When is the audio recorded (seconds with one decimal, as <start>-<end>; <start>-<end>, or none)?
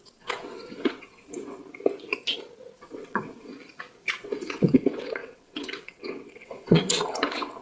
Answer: 1.6-2.8; 3.5-4.2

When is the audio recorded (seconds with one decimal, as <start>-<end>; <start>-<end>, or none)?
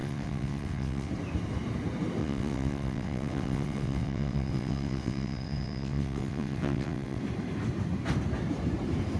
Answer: 1.1-2.2; 7.2-9.2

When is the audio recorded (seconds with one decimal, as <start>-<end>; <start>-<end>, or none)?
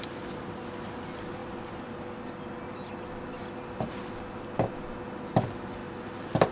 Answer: 0.0-6.5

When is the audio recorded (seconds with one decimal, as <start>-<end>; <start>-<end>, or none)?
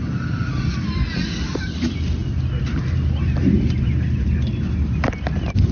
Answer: 0.0-5.7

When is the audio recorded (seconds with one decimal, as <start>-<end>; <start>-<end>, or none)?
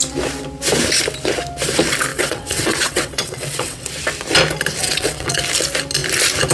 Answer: 0.0-2.1; 3.9-4.8; 5.4-6.5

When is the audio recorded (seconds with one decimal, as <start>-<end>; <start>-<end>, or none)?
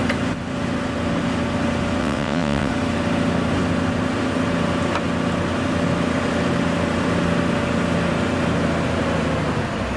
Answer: 0.0-2.0; 2.7-10.0